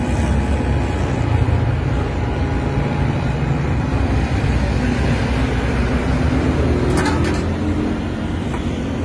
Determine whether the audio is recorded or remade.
recorded